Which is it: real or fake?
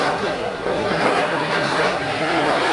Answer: fake